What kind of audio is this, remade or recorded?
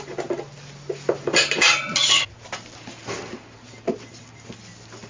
recorded